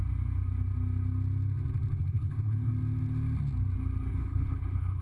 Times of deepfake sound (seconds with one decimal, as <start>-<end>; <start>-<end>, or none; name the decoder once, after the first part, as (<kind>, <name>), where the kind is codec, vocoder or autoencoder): 2.0-2.7 (codec, HILCodec); 4.1-5.0